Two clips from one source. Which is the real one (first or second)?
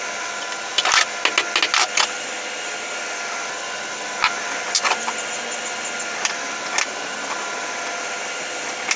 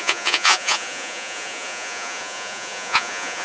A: first